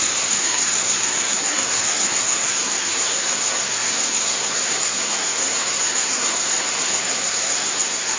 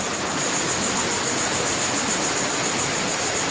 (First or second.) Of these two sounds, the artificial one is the first